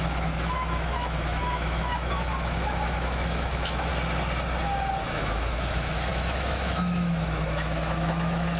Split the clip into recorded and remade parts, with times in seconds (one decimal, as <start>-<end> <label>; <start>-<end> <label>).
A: 0.0-3.9 remade; 3.9-5.0 recorded; 5.0-8.6 remade